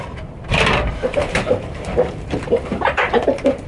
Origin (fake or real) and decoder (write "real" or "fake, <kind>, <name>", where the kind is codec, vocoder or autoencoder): fake, vocoder, BigVGAN v2